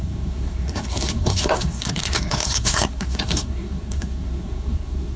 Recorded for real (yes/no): no